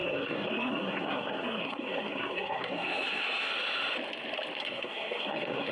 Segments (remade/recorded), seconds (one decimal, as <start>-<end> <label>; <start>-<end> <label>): 0.0-3.5 remade; 3.5-4.6 recorded; 4.6-5.7 remade